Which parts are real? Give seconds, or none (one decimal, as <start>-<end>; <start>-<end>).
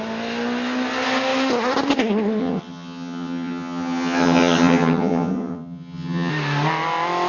0.0-2.4; 6.3-7.3